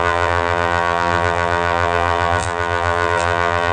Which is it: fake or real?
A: fake